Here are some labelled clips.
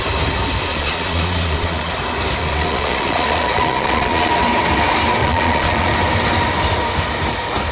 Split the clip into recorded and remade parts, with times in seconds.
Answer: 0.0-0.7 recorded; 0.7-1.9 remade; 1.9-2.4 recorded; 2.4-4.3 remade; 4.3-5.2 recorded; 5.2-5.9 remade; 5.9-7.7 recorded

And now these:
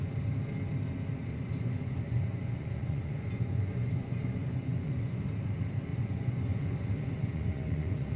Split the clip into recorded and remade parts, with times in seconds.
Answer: 0.0-1.3 recorded; 1.3-5.3 remade; 5.3-5.9 recorded; 5.9-8.2 remade

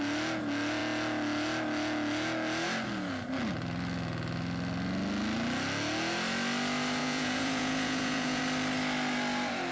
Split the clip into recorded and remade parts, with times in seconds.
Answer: 0.0-7.0 recorded; 7.0-8.4 remade; 8.4-9.7 recorded